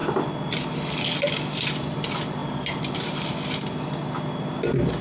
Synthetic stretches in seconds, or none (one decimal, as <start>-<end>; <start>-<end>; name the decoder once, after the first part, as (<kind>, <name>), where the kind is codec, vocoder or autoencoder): none